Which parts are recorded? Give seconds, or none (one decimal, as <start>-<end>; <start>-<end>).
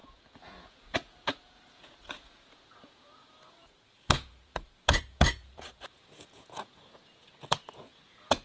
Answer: none